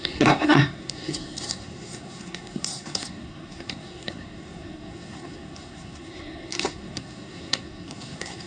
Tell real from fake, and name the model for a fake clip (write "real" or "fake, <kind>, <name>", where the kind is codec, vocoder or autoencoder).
fake, codec, SNAC